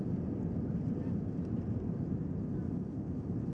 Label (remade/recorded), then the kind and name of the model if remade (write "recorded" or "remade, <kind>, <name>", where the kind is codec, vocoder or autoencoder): recorded